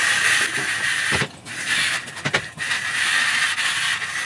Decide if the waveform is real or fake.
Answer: real